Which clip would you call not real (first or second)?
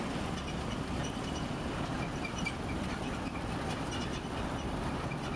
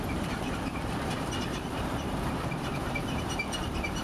second